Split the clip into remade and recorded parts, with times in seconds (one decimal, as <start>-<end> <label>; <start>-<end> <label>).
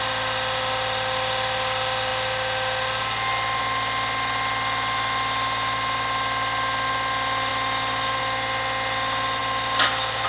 0.0-10.3 recorded